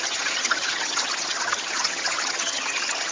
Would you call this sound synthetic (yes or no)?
yes